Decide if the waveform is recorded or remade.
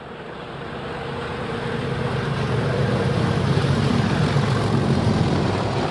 remade